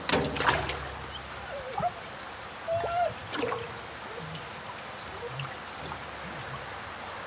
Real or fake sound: real